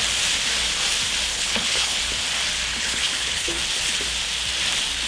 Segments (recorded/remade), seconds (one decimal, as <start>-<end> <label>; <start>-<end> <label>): 0.0-1.3 recorded; 1.3-2.0 remade; 2.0-2.7 recorded; 2.7-3.6 remade; 3.6-5.1 recorded